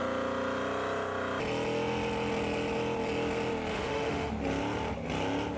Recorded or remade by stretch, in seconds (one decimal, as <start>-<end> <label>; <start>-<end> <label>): 0.0-3.7 recorded; 3.7-4.3 remade; 4.3-5.6 recorded